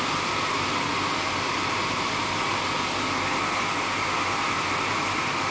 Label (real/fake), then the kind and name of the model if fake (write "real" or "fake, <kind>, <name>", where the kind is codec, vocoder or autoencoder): real